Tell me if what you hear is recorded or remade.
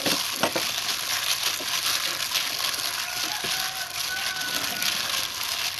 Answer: recorded